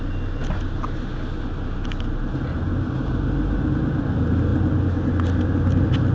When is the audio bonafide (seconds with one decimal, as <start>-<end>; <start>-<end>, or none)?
0.0-6.1